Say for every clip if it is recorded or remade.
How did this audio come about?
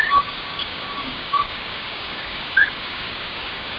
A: remade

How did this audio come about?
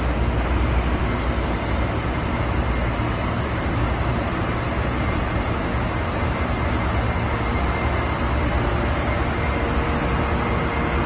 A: recorded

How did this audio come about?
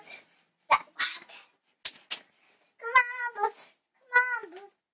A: recorded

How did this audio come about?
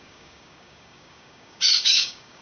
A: remade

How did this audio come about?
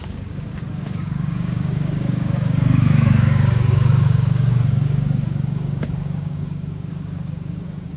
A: remade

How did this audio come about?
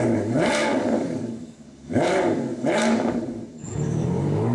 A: remade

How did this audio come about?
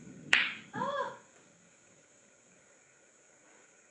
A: remade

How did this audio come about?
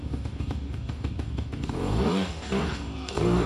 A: remade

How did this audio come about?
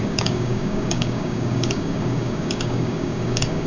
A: remade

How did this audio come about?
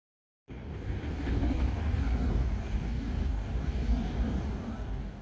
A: remade